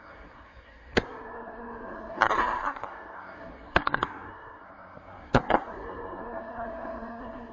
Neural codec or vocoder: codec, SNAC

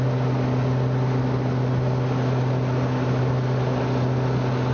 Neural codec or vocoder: none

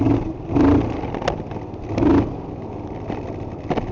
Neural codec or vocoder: none